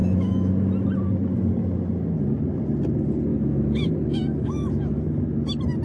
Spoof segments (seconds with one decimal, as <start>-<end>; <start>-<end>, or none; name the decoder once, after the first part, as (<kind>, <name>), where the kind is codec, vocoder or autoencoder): 0.0-0.5 (autoencoder, DAC-VAE); 3.3-4.9